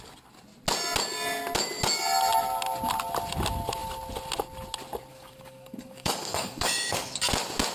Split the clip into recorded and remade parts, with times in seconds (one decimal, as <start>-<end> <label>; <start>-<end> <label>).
0.0-5.1 recorded; 5.1-7.3 remade; 7.3-7.7 recorded